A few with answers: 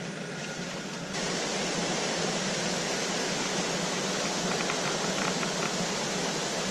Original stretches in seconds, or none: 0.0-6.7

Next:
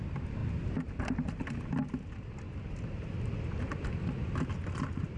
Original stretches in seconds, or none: 0.0-5.2